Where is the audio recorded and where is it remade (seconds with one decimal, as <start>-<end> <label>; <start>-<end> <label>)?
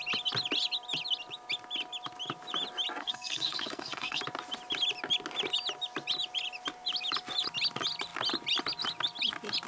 0.0-3.0 recorded; 3.0-4.2 remade; 4.2-9.7 recorded